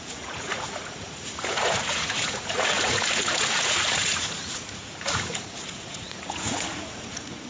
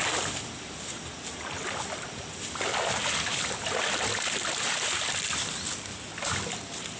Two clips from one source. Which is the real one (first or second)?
second